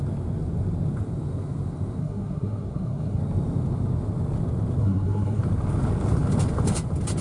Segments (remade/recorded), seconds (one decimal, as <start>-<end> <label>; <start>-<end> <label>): 0.0-2.0 recorded; 2.0-3.2 remade; 3.2-4.8 recorded; 4.8-5.4 remade; 5.4-7.2 recorded